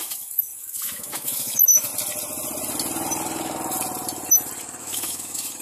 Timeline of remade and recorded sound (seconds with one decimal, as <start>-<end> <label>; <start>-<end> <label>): 0.0-1.9 remade; 1.9-4.8 recorded; 4.8-5.6 remade